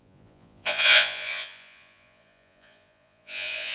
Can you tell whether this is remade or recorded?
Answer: remade